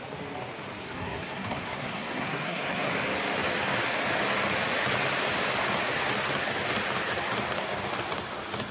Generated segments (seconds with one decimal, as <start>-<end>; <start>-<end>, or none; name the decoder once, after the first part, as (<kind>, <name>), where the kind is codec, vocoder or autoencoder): 0.8-2.9 (codec, SNAC)